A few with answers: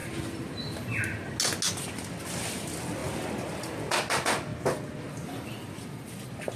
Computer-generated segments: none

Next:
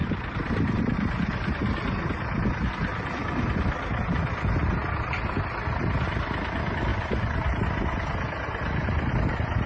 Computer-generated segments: none

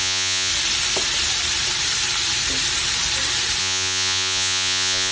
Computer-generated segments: 0.0-0.5 (vocoder, Vocos); 3.6-5.1

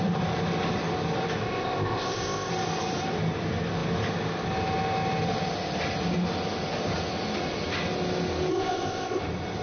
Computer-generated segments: 1.4-2.5 (codec, ZipCodec); 8.5-9.2